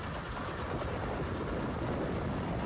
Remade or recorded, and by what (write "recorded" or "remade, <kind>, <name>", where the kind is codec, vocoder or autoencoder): recorded